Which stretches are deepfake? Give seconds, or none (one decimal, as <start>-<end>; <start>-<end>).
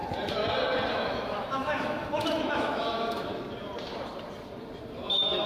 0.9-3.3; 5.1-5.5